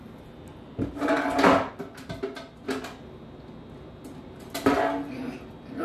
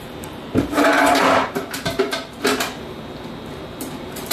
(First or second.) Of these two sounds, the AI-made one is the second